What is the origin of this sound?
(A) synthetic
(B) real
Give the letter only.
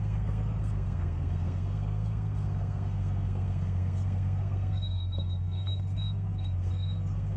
A